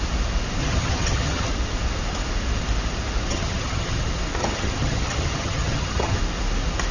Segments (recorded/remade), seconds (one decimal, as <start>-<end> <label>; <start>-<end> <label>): 0.0-0.6 recorded; 0.6-1.5 remade; 1.5-3.3 recorded; 3.3-4.0 remade; 4.0-4.4 recorded; 4.4-6.2 remade; 6.2-6.9 recorded